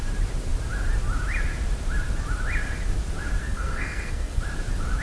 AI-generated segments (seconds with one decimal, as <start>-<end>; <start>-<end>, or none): 3.4-4.4